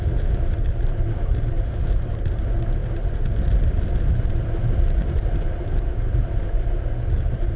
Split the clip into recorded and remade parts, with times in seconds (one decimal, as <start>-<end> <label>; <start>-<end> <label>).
0.0-7.6 remade